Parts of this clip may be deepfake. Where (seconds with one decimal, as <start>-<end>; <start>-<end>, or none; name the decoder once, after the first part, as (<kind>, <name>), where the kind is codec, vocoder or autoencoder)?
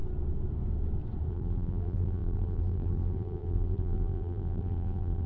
1.3-5.3 (vocoder, BigVGAN v2)